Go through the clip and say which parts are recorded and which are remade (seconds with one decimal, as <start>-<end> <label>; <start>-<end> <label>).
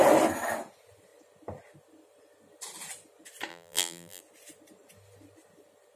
0.0-3.5 recorded; 3.5-4.2 remade; 4.2-6.0 recorded